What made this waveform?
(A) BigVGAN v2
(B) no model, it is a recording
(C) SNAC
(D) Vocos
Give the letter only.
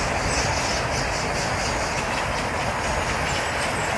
B